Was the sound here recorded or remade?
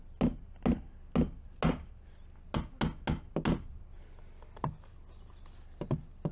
recorded